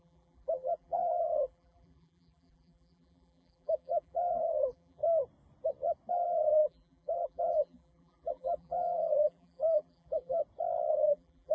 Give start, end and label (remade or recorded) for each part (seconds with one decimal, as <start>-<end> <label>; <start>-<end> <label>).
0.0-5.0 remade; 5.0-6.1 recorded; 6.1-10.4 remade; 10.4-10.9 recorded; 10.9-11.5 remade